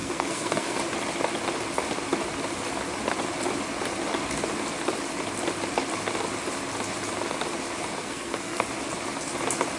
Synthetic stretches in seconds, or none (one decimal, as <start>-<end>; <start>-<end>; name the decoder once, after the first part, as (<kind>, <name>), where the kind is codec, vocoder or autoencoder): 0.0-0.8 (codec, SNAC); 8.0-8.7